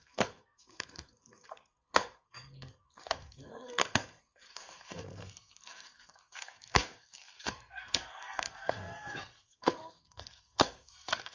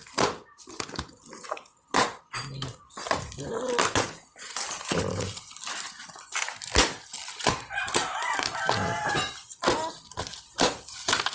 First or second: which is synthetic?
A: first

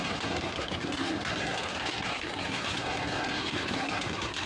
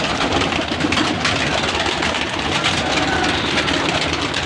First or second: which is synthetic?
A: first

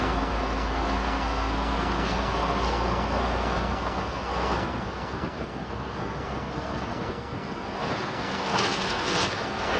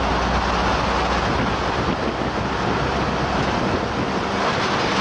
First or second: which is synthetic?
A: first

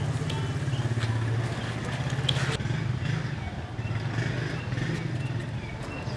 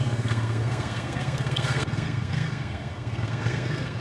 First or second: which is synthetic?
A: second